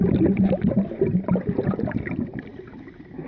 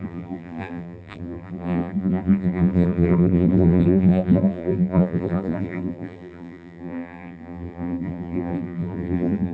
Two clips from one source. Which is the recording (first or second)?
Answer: first